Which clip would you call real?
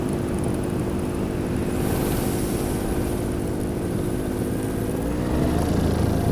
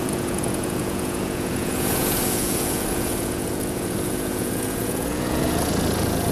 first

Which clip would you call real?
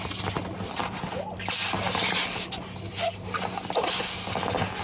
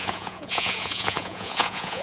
first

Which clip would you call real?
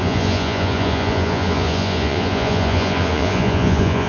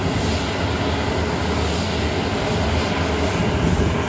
second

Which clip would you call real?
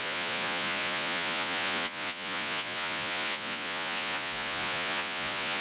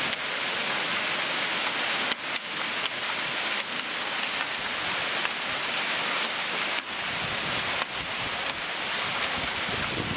second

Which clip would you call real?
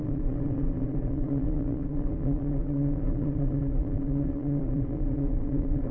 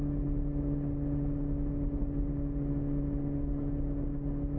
second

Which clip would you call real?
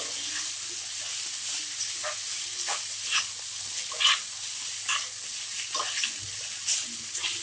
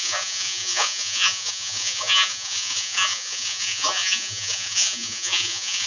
first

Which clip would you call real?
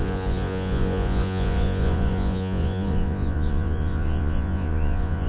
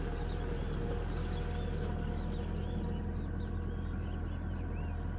second